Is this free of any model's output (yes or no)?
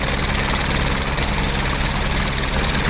yes